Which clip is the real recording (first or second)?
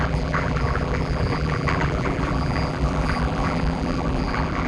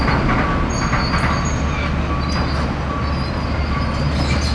second